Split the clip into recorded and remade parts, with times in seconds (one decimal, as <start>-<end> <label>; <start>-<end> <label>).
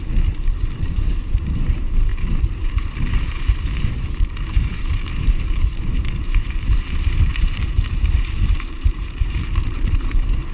0.0-10.5 remade